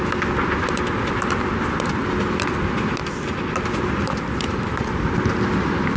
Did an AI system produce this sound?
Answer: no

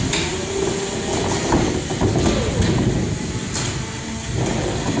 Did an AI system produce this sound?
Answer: no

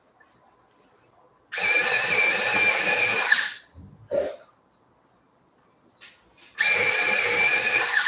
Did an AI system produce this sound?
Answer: no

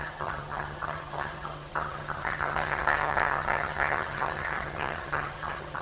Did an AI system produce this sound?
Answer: yes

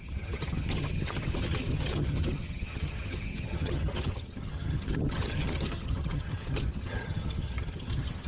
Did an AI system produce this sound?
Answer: yes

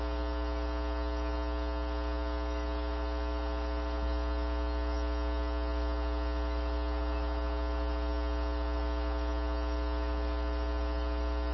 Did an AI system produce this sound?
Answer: no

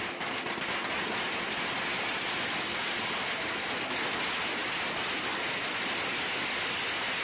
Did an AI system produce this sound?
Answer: no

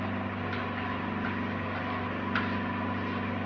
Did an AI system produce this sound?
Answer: no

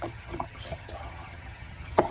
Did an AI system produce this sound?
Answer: yes